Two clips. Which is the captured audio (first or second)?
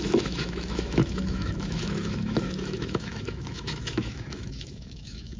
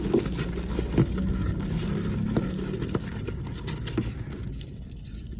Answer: second